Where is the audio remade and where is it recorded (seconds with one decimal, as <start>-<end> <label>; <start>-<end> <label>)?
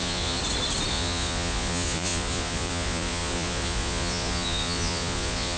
0.0-0.4 remade; 0.4-0.9 recorded; 0.9-5.6 remade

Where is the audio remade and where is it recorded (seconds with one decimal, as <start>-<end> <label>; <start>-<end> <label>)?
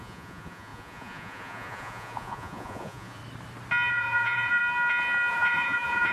0.0-3.2 remade; 3.2-3.9 recorded; 3.9-4.6 remade; 4.6-5.3 recorded; 5.3-6.1 remade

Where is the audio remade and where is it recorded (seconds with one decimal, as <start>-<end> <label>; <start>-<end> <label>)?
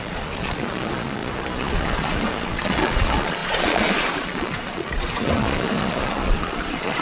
0.0-7.0 remade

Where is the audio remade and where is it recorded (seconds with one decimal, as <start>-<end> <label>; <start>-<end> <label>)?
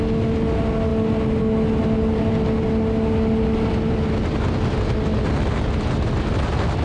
0.0-6.8 recorded